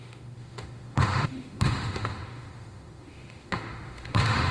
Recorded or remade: remade